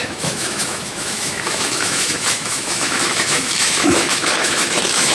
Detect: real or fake fake